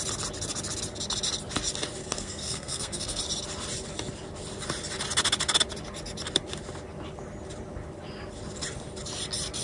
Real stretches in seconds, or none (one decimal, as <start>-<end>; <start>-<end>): 0.0-2.0; 3.2-9.6